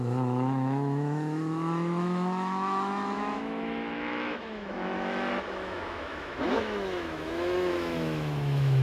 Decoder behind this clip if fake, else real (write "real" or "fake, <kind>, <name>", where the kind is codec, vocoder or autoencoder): fake, autoencoder, DAC-VAE